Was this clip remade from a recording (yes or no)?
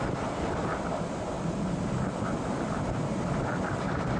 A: no